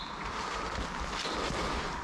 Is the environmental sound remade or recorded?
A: recorded